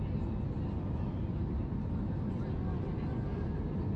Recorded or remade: recorded